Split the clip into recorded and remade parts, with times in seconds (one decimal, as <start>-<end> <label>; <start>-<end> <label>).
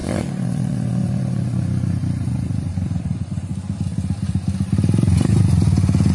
0.0-3.5 remade; 3.5-6.1 recorded